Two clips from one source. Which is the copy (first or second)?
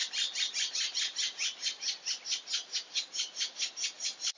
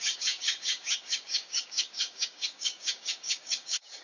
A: second